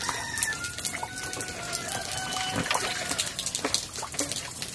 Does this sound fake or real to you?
real